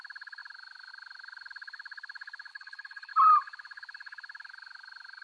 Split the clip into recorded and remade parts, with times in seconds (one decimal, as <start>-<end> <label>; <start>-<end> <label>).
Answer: 0.0-2.5 recorded; 2.5-3.1 remade; 3.1-5.2 recorded